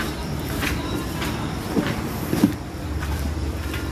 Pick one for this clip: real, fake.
fake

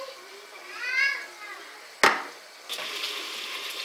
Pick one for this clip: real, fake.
real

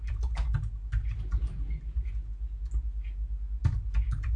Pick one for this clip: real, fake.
real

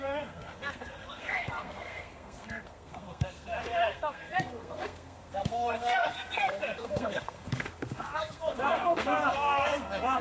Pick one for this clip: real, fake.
fake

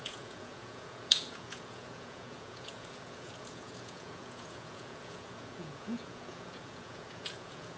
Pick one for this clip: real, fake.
fake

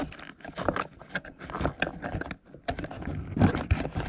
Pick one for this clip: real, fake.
real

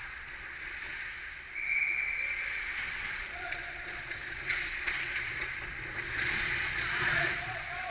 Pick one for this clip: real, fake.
fake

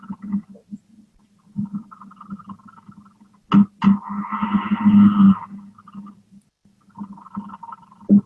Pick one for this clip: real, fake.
real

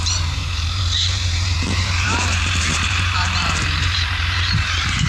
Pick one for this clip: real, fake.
fake